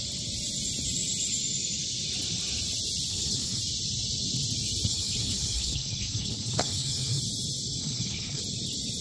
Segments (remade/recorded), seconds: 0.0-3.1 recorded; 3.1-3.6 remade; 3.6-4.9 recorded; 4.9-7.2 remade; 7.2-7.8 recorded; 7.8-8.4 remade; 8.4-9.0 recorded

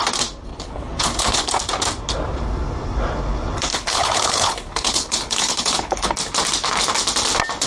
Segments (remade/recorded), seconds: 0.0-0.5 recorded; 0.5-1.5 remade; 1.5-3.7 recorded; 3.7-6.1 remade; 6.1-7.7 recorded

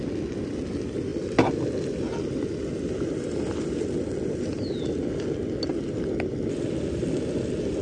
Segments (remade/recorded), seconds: 0.0-7.8 recorded

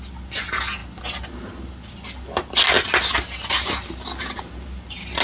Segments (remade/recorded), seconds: 0.0-5.2 recorded

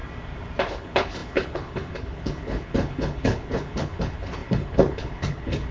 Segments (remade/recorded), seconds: 0.0-0.7 recorded; 0.7-5.7 remade